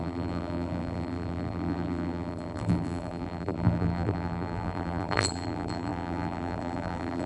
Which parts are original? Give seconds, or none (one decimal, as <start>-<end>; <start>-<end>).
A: none

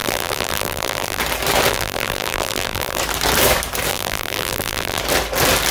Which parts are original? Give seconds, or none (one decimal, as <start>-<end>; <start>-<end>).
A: 1.2-1.7; 3.0-3.9; 5.0-5.7

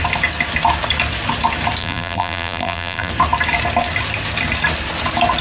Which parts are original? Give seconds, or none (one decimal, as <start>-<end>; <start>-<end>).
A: 0.0-1.8; 3.1-5.4

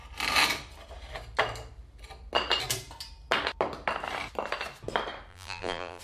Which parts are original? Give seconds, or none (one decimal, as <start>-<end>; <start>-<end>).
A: 0.0-5.3

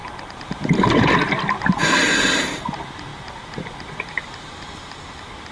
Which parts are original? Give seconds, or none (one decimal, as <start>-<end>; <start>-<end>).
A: 1.0-1.8; 2.4-3.1; 4.2-5.5

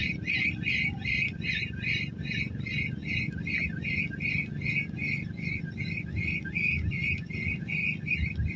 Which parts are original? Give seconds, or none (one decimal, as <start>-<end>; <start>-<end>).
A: 0.0-8.6